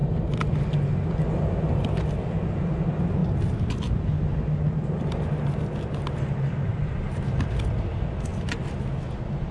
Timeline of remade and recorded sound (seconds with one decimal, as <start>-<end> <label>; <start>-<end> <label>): 0.0-6.7 recorded; 6.7-7.4 remade; 7.4-9.5 recorded